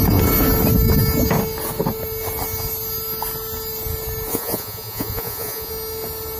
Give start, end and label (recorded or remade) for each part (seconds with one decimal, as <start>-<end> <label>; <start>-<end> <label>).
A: 0.0-4.3 recorded; 4.3-5.7 remade; 5.7-6.4 recorded